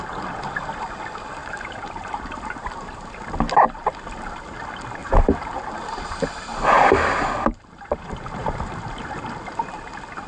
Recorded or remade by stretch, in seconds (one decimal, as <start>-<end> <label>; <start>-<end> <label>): 0.0-1.4 recorded; 1.4-3.3 remade; 3.3-5.0 recorded; 5.0-5.8 remade; 5.8-6.5 recorded; 6.5-9.2 remade; 9.2-10.3 recorded